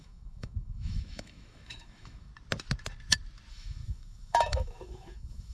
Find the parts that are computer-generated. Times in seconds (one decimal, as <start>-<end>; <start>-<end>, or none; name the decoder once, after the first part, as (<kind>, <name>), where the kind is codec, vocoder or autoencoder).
0.0-2.3 (autoencoder, DAC-VAE); 3.5-5.5